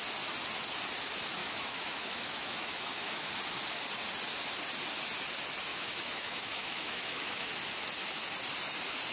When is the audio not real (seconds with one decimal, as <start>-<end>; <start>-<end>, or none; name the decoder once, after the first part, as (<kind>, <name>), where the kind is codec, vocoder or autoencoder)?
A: 1.4-3.3 (autoencoder, DAC-VAE); 5.7-7.5